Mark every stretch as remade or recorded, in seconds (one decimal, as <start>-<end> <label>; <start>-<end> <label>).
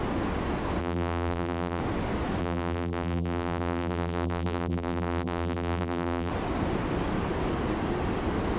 0.0-0.8 recorded; 0.8-1.8 remade; 1.8-2.4 recorded; 2.4-6.3 remade; 6.3-8.6 recorded